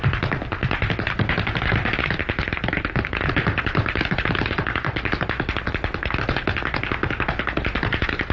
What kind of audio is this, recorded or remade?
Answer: recorded